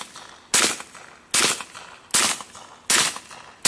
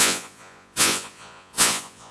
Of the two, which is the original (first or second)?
first